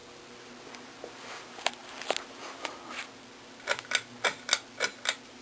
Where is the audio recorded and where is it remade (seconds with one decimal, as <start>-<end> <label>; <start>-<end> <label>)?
0.0-5.4 recorded